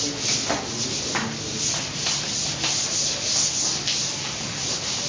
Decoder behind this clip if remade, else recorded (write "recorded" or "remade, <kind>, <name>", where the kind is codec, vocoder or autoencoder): recorded